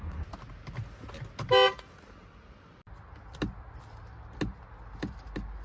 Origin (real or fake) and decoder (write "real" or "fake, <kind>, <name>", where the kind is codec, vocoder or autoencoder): real